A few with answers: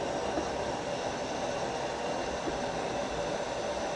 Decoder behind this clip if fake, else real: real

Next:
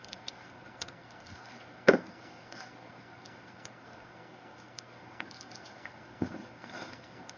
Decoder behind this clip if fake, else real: fake, codec, SNAC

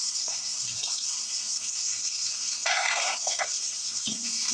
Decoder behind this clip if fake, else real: fake, codec, SNAC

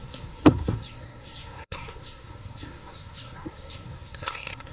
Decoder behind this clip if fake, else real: fake, codec, SNAC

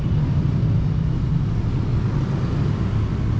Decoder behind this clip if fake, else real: real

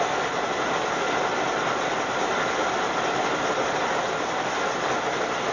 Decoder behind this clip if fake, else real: real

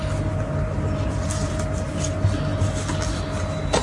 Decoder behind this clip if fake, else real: real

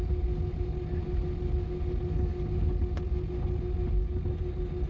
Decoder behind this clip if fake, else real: real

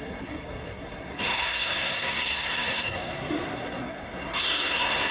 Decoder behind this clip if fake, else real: fake, codec, SNAC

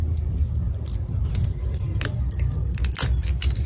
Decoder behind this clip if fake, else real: real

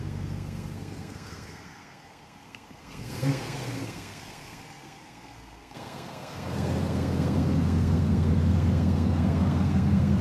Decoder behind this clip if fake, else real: fake, codec, SNAC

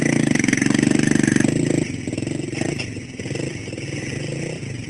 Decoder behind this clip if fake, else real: real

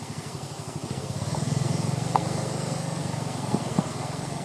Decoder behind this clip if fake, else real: fake, codec, SNAC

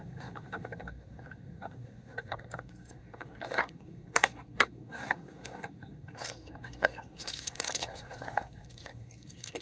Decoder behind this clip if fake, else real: fake, codec, SNAC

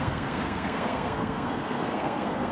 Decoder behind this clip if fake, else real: fake, codec, SNAC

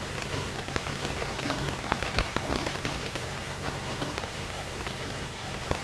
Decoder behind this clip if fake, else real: fake, codec, SNAC